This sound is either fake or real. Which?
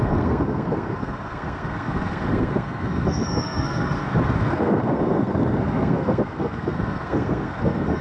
fake